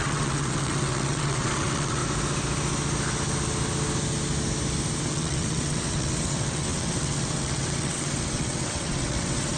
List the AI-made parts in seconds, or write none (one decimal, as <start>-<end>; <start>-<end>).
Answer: 0.0-2.0; 5.1-9.6